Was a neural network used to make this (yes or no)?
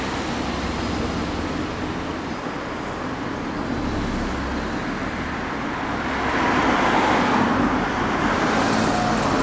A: no